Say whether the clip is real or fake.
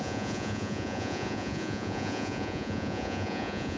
fake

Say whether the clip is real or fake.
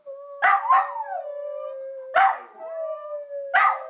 real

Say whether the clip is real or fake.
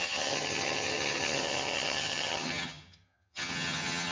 fake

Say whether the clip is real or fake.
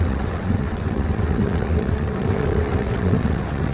fake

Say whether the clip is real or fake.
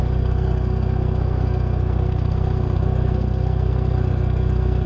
fake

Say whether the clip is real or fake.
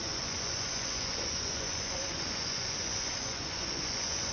fake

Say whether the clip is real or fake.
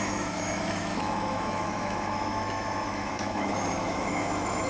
fake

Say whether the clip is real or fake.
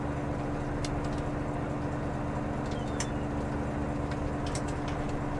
real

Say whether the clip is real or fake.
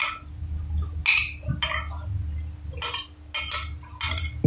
real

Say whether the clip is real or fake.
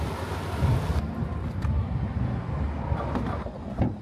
real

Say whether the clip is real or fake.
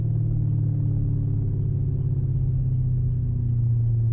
real